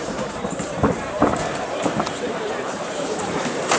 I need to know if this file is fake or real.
fake